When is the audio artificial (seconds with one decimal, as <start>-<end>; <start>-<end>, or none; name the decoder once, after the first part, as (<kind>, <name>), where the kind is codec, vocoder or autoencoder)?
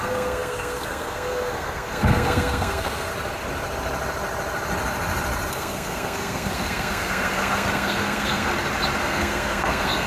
0.0-3.1 (codec, SNAC); 5.5-8.5; 9.0-10.1